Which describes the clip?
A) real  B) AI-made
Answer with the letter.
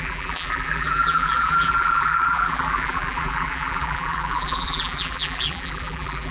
B